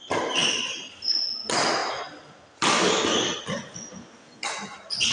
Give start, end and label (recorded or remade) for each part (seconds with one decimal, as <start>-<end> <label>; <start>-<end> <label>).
0.0-5.1 recorded